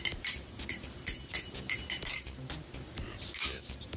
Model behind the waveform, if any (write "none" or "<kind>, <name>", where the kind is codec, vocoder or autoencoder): vocoder, BigVGAN v2